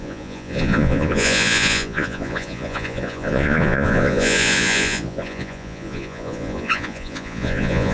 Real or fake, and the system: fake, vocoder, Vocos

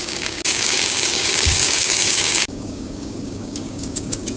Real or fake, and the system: fake, codec, DAC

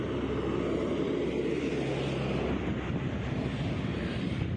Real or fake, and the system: real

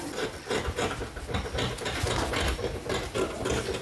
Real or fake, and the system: real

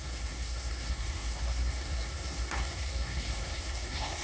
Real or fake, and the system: fake, codec, SNAC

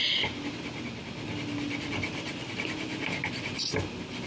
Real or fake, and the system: real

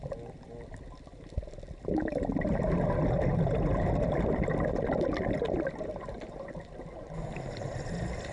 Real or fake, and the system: real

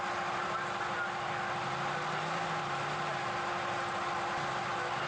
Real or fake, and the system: real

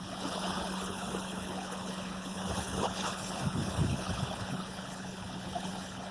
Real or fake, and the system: fake, codec, HILCodec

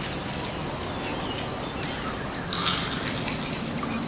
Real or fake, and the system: real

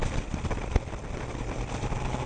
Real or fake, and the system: real